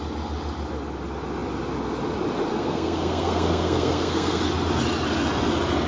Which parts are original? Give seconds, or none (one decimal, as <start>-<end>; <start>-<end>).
0.0-2.5; 4.4-5.9